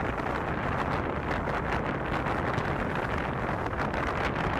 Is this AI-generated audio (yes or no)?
no